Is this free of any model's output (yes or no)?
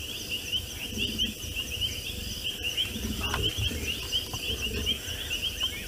yes